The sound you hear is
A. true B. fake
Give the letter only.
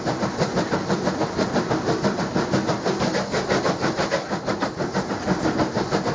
A